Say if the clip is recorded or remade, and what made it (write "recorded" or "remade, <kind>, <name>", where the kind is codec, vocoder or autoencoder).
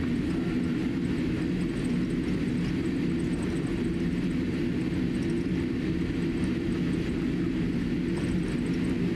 recorded